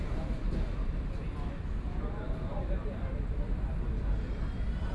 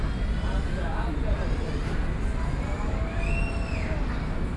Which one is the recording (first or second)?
second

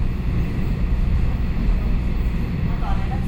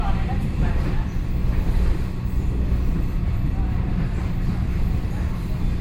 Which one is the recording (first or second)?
first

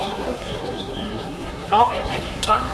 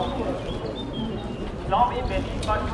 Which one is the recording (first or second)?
second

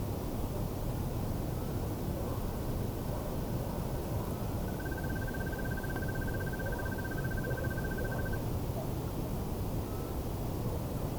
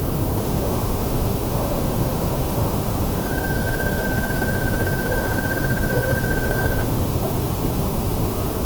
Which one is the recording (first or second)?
first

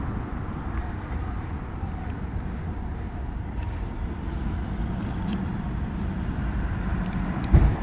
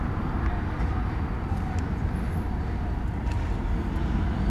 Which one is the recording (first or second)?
second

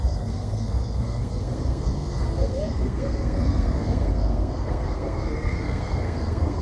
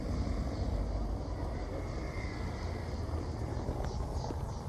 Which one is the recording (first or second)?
second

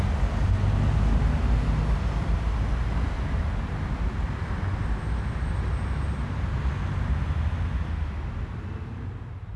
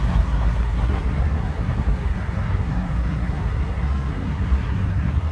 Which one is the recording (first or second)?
first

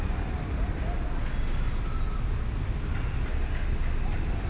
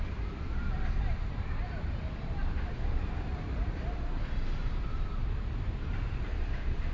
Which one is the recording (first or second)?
first